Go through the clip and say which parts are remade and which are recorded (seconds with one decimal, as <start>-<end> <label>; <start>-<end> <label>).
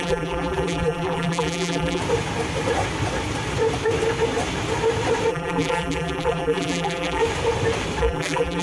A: 0.0-2.0 remade; 2.0-5.3 recorded; 5.3-7.2 remade; 7.2-8.0 recorded; 8.0-8.6 remade